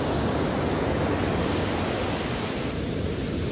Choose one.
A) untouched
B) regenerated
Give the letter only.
A